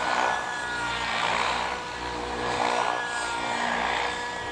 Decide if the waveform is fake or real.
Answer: real